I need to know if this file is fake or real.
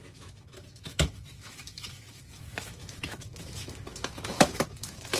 fake